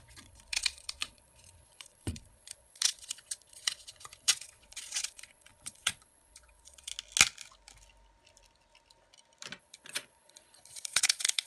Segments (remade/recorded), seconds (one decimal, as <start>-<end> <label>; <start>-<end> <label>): 0.0-6.9 remade; 6.9-9.6 recorded; 9.6-11.5 remade

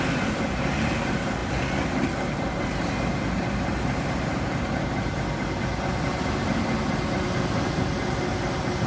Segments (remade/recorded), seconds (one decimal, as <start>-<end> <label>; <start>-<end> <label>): 0.0-8.9 recorded

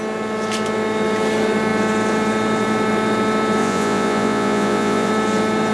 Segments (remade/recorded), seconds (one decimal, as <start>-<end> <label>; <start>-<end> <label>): 0.0-3.6 recorded; 3.6-5.1 remade; 5.1-5.7 recorded

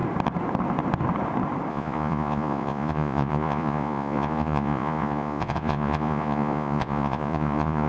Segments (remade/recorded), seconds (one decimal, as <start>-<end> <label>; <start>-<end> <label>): 0.0-1.7 recorded; 1.7-7.9 remade

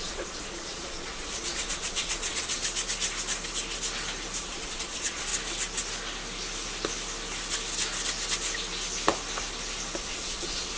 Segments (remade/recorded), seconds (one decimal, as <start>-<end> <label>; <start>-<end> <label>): 0.0-2.6 remade; 2.6-4.4 recorded; 4.4-5.3 remade; 5.3-10.0 recorded; 10.0-10.8 remade